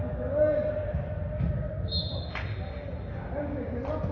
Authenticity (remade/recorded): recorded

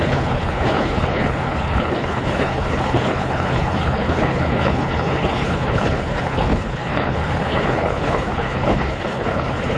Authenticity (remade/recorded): remade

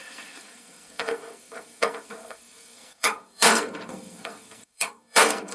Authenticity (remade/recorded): remade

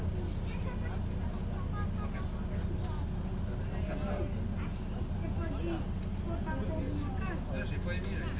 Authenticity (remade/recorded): recorded